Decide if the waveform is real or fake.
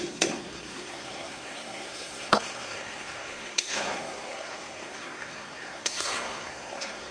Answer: fake